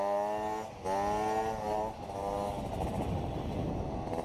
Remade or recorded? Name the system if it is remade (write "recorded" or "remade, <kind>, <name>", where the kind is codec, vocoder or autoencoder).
recorded